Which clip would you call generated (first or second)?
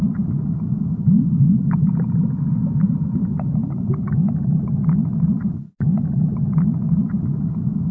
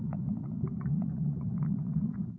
second